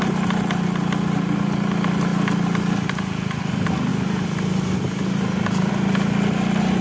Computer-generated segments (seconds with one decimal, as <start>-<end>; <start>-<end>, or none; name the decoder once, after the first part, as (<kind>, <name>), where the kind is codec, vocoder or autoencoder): none